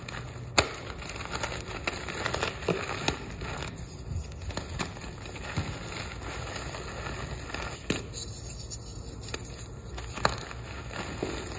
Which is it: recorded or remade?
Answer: recorded